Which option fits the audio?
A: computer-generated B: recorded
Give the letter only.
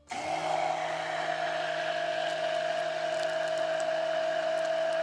B